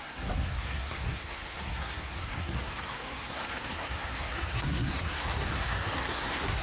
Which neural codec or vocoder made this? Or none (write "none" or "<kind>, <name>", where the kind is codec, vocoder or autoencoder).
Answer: codec, SNAC